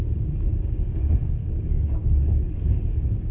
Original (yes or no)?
no